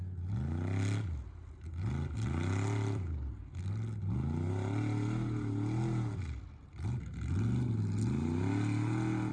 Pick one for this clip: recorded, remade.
recorded